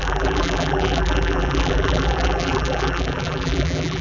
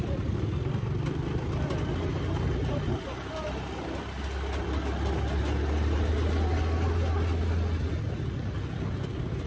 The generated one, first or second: first